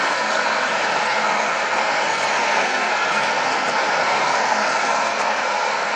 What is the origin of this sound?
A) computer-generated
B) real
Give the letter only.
A